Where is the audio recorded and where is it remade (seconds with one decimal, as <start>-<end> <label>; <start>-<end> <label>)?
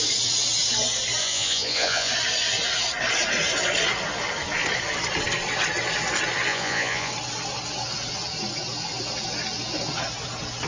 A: 0.0-1.2 recorded; 1.2-2.1 remade; 2.1-6.5 recorded; 6.5-7.1 remade; 7.1-10.7 recorded